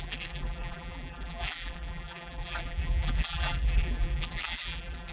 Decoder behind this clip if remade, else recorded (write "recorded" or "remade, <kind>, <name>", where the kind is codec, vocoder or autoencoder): remade, vocoder, BigVGAN v2